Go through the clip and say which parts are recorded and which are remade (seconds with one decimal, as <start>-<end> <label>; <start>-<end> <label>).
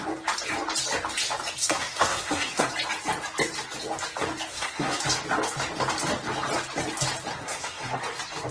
0.0-1.6 recorded; 1.6-2.7 remade; 2.7-4.5 recorded; 4.5-5.0 remade; 5.0-7.3 recorded; 7.3-8.0 remade; 8.0-8.5 recorded